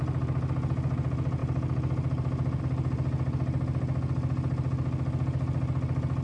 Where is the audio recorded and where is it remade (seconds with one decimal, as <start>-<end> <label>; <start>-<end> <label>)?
0.0-6.2 recorded